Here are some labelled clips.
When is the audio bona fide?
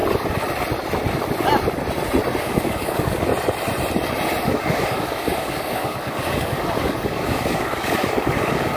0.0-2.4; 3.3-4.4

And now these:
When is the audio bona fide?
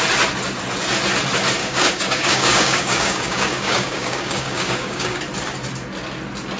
0.0-1.6; 5.2-6.6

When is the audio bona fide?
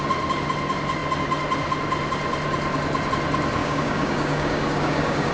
0.0-3.6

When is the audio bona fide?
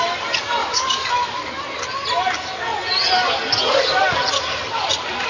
0.0-0.6; 1.6-5.3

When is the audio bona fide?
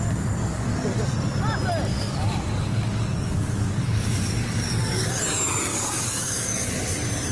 0.0-0.4; 1.0-1.9; 5.2-5.7; 6.7-7.3